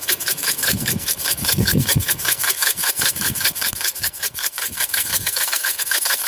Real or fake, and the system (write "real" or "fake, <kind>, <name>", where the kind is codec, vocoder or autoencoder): fake, codec, SNAC